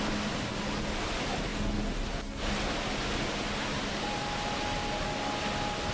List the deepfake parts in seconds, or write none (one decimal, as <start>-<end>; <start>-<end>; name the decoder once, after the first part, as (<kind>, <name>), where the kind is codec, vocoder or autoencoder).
none